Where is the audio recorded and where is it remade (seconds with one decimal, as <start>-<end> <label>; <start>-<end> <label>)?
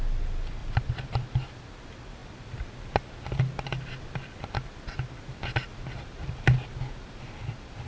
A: 0.0-0.6 recorded; 0.6-1.5 remade; 1.5-7.9 recorded